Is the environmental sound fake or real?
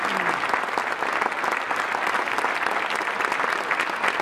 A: real